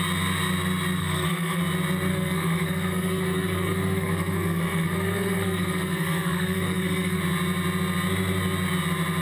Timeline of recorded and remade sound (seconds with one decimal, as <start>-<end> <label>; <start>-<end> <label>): 0.0-1.0 recorded; 1.0-1.6 remade; 1.6-2.1 recorded; 2.1-7.2 remade; 7.2-9.2 recorded